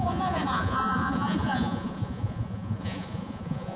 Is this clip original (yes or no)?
no